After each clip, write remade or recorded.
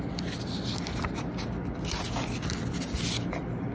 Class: recorded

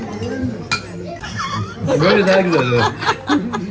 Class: recorded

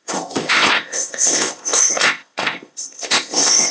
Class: remade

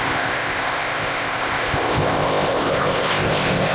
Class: remade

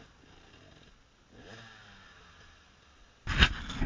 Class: recorded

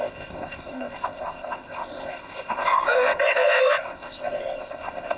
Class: remade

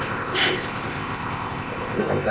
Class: remade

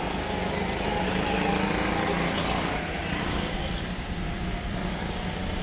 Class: recorded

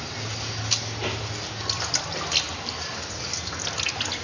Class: recorded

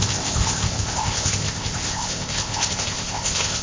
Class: remade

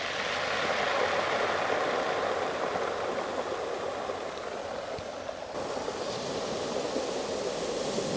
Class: recorded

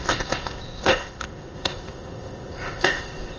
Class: remade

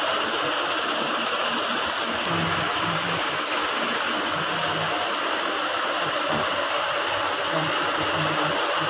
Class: recorded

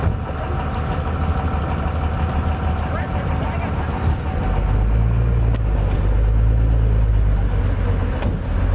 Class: recorded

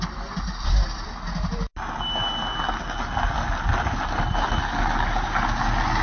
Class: recorded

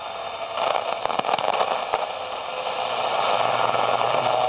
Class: recorded